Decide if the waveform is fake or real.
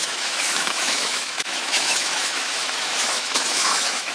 fake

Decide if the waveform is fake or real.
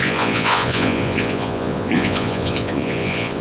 fake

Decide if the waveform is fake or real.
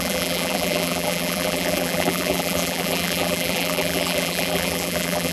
fake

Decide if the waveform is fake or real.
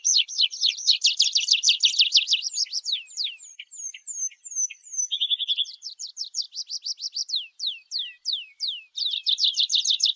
fake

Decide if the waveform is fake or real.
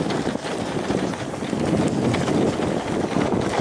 real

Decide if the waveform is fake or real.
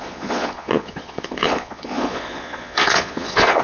fake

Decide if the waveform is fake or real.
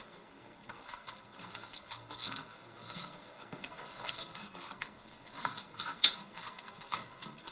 fake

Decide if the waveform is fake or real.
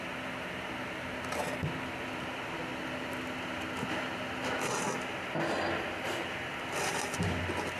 real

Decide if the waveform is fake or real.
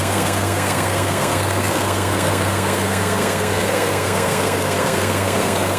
fake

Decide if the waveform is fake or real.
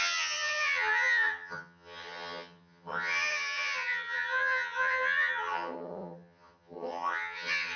fake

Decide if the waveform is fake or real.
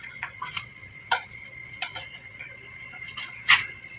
fake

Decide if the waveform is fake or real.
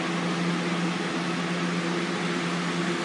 real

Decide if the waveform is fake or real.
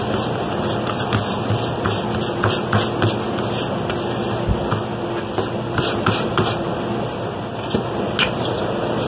real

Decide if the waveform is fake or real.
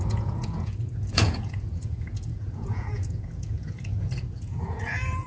fake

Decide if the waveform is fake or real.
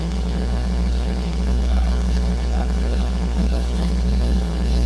fake